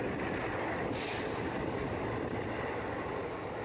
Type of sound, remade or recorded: recorded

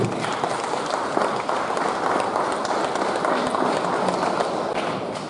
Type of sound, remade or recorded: recorded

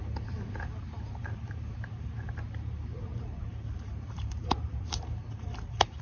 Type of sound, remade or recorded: remade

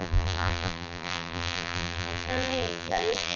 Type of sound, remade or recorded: remade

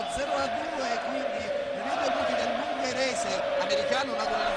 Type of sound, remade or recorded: recorded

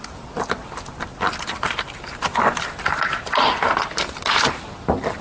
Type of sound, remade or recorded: recorded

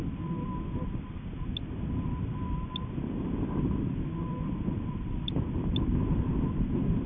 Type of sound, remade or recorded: recorded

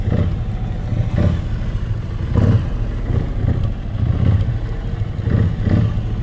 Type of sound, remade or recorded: recorded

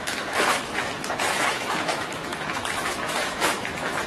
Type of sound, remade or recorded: remade